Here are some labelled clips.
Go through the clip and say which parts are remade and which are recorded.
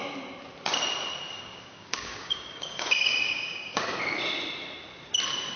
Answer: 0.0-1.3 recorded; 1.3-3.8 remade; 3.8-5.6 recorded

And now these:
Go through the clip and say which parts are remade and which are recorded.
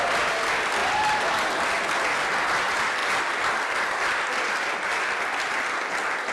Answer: 0.0-6.3 recorded